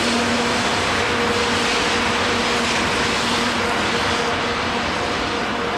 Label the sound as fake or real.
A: real